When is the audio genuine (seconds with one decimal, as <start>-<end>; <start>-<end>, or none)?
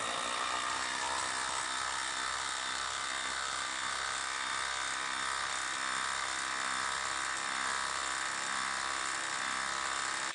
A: 0.0-2.0; 3.8-10.3